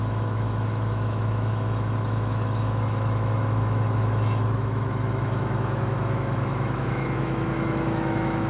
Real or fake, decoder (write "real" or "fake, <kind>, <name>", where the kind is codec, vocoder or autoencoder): fake, autoencoder, DAC-VAE